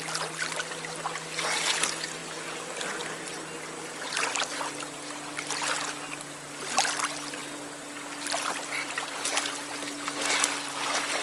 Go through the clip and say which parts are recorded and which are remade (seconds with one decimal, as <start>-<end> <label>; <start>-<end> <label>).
0.0-11.2 recorded